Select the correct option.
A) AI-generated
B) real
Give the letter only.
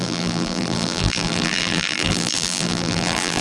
A